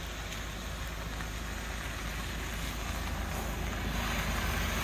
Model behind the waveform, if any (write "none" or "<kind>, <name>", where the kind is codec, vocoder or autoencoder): none